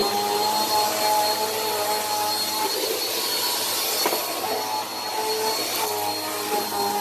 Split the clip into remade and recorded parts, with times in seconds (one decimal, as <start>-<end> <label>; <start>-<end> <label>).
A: 0.0-7.0 recorded